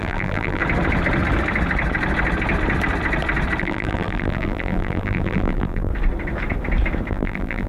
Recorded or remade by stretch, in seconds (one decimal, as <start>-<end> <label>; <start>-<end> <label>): 0.0-0.6 remade; 0.6-3.6 recorded; 3.6-5.9 remade; 5.9-7.1 recorded; 7.1-7.7 remade